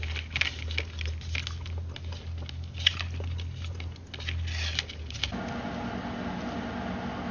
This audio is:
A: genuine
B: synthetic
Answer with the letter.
A